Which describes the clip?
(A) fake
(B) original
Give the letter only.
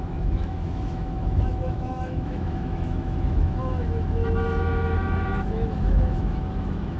A